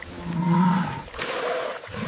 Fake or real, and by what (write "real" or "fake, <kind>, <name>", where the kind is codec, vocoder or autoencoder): real